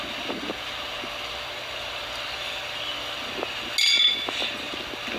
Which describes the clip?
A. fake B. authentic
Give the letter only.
B